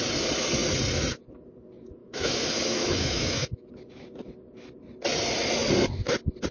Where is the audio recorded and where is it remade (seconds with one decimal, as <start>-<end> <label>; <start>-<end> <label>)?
0.0-2.0 recorded; 2.0-3.7 remade; 3.7-6.5 recorded

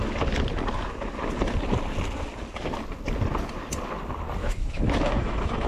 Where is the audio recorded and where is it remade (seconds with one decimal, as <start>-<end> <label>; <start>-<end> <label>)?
0.0-4.4 recorded; 4.4-5.7 remade